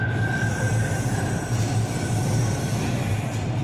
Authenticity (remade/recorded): remade